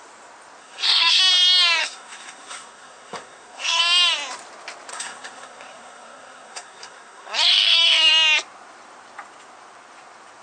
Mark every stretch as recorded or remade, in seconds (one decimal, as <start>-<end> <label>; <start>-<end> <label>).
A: 0.0-0.6 recorded; 0.6-1.2 remade; 1.2-1.8 recorded; 1.8-3.8 remade; 3.8-4.9 recorded; 4.9-8.1 remade; 8.1-10.4 recorded

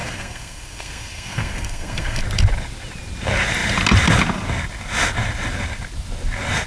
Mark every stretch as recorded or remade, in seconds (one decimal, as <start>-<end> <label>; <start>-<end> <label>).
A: 0.0-2.2 remade; 2.2-6.7 recorded

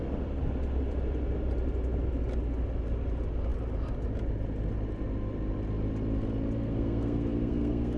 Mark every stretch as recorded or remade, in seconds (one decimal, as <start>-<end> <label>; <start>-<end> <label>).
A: 0.0-6.6 recorded; 6.6-8.0 remade

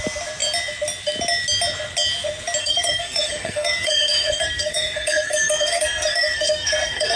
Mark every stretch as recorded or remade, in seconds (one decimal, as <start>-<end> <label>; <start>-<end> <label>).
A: 0.0-2.6 recorded; 2.6-7.2 remade